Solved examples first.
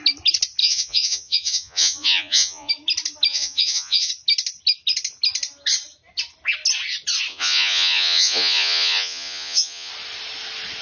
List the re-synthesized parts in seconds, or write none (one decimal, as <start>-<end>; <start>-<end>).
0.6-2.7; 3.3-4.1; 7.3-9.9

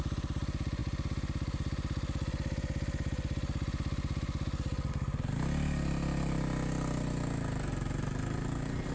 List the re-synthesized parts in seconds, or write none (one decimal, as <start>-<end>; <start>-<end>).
none

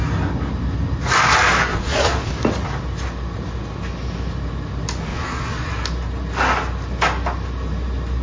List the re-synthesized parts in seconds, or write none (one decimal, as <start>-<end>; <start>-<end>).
1.7-2.3; 5.1-5.7

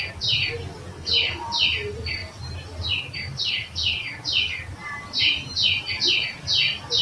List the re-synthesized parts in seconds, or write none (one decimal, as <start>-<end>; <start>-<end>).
0.9-1.4

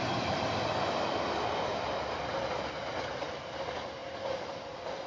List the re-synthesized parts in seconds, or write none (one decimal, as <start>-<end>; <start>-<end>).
none

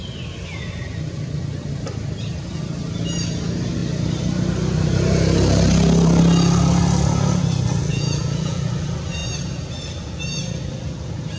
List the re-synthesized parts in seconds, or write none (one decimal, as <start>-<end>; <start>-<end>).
7.9-8.6

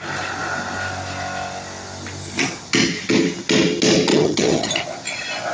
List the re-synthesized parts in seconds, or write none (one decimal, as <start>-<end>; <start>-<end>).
4.1-4.7